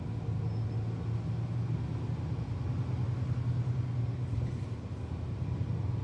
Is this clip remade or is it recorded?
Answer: recorded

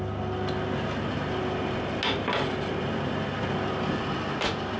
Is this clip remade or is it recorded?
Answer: recorded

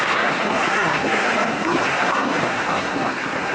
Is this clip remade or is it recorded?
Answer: remade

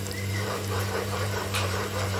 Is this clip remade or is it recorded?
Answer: remade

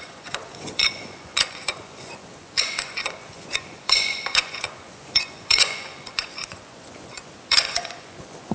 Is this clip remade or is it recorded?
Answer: remade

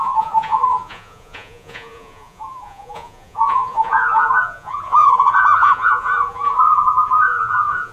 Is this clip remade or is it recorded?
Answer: remade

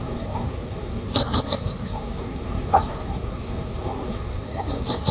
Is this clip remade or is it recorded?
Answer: remade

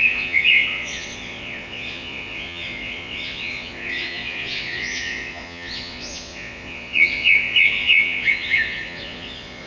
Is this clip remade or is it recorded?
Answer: remade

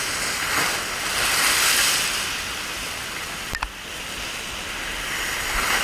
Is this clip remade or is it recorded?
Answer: recorded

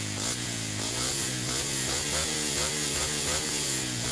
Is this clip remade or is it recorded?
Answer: remade